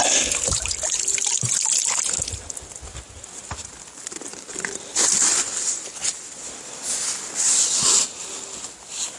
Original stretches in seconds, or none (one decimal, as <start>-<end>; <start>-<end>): 0.0-4.3; 5.1-9.2